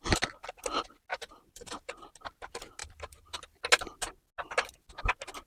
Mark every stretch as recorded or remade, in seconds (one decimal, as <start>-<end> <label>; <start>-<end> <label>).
0.0-1.1 recorded; 1.1-1.9 remade; 1.9-2.8 recorded; 2.8-3.3 remade; 3.3-5.5 recorded